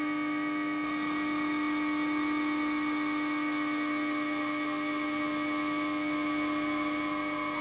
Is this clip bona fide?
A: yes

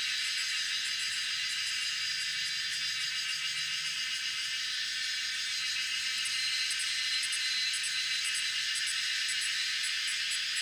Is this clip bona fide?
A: yes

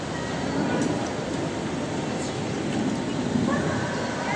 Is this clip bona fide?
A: yes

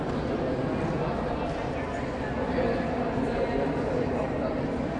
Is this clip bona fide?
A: yes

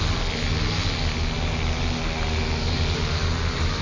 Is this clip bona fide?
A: yes